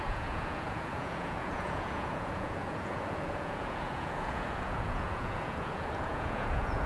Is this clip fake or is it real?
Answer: fake